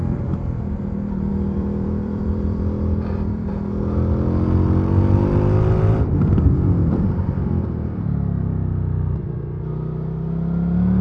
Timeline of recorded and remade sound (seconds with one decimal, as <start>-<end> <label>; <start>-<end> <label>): 0.0-1.3 recorded; 1.3-3.5 remade; 3.5-11.0 recorded